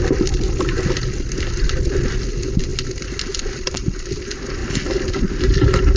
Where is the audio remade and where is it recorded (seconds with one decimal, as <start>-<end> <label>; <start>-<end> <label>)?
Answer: 0.0-6.0 recorded